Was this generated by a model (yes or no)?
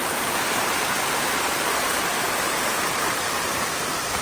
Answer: yes